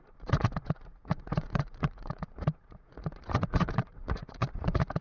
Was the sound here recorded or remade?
remade